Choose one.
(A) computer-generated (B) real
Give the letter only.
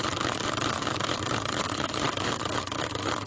A